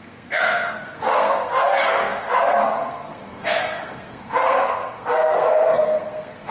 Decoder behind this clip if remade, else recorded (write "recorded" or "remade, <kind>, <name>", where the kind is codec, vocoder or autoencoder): remade, codec, SNAC